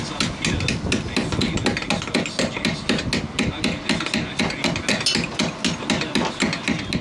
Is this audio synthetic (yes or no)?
no